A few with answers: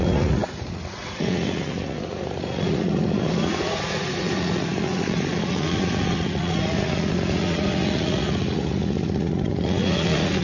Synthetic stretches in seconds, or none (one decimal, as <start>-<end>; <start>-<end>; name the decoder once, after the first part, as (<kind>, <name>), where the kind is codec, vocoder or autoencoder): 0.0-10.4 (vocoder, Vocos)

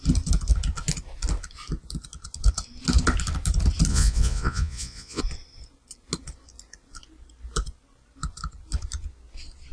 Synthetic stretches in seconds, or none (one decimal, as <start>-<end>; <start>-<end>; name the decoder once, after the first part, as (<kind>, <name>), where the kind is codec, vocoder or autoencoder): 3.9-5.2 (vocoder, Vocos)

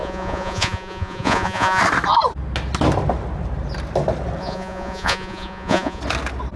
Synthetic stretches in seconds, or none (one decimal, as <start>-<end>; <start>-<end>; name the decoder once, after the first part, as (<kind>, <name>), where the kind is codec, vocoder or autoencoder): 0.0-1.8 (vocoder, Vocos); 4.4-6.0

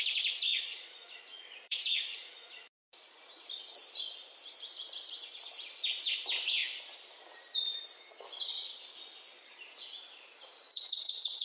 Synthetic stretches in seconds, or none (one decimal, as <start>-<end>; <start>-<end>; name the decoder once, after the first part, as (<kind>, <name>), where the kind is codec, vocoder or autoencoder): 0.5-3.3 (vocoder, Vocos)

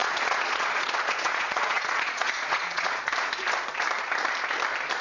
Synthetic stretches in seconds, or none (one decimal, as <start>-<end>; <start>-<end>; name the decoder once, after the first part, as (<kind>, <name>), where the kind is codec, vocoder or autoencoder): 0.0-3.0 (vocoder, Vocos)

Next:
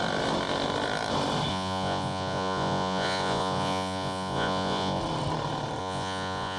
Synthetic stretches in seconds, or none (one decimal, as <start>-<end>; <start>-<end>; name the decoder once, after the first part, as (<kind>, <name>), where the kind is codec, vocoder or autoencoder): 1.5-5.0 (vocoder, Vocos); 5.8-6.6